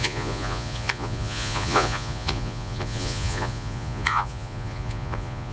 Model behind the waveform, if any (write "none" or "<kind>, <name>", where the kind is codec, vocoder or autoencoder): vocoder, Vocos